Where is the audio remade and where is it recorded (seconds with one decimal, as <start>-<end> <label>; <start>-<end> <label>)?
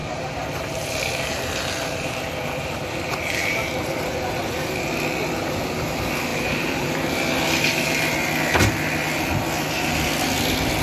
0.0-4.9 remade; 4.9-6.3 recorded; 6.3-6.9 remade; 6.9-10.8 recorded